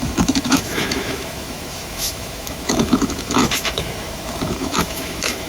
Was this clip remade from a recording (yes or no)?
yes